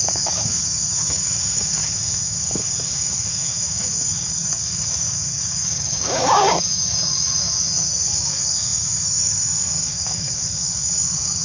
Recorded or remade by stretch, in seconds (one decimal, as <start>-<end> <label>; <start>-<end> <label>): 0.0-11.4 remade

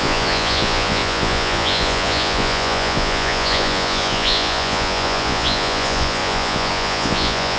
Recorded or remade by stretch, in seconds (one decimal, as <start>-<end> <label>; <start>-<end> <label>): 0.0-7.6 remade

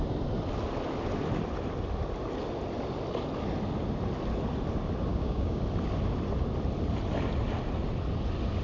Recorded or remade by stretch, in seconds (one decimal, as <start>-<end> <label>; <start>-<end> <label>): 0.0-5.1 recorded; 5.1-5.6 remade; 5.6-8.6 recorded

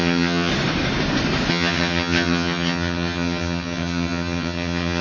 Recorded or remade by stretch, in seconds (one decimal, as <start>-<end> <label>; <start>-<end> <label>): 0.0-0.5 remade; 0.5-1.5 recorded; 1.5-5.0 remade

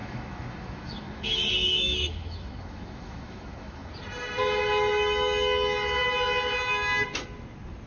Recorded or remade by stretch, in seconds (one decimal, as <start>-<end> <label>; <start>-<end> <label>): 0.0-3.9 remade; 3.9-7.9 recorded

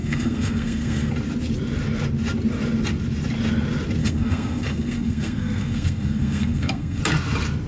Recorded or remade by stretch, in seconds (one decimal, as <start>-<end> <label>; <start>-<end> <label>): 0.0-1.1 remade; 1.1-4.0 recorded; 4.0-7.0 remade; 7.0-7.7 recorded